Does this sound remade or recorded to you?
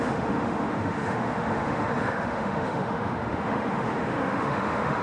remade